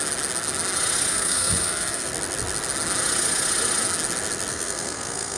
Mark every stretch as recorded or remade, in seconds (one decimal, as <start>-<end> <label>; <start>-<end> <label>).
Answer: 0.0-1.1 recorded; 1.1-2.1 remade; 2.1-4.5 recorded; 4.5-5.4 remade

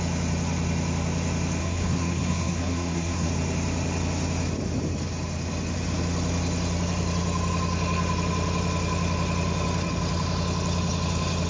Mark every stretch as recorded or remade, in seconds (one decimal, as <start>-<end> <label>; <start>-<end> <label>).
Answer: 0.0-1.6 recorded; 1.6-3.3 remade; 3.3-11.5 recorded

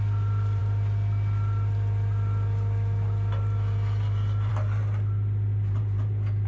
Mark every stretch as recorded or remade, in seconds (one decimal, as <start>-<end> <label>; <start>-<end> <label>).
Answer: 0.0-6.5 recorded

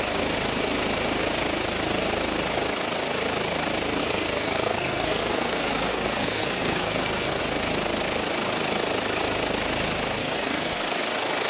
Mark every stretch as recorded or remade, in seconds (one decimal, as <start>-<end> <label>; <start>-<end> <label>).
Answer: 0.0-4.0 recorded; 4.0-7.4 remade; 7.4-10.2 recorded; 10.2-11.0 remade; 11.0-11.5 recorded

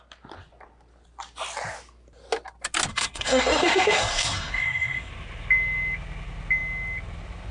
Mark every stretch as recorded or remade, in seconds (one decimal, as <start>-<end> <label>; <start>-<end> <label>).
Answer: 0.0-2.9 recorded; 2.9-5.1 remade; 5.1-7.5 recorded

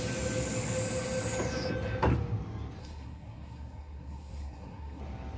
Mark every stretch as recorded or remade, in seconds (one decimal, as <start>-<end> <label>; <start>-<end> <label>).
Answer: 0.0-2.8 recorded; 2.8-5.0 remade; 5.0-5.4 recorded